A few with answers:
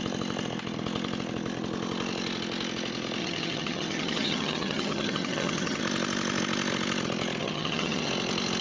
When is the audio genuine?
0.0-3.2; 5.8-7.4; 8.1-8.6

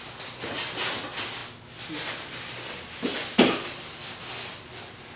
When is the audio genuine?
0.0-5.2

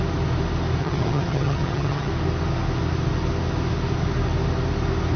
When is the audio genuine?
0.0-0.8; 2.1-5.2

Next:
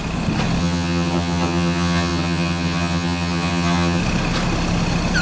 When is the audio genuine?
0.0-0.6; 4.0-5.2